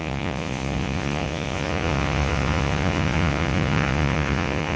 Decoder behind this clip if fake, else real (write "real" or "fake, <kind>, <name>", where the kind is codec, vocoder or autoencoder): fake, vocoder, Vocos